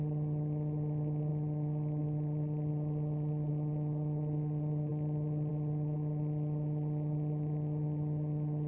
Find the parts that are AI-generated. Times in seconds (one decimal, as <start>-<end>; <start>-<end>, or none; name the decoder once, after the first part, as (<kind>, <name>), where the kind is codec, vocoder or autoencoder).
none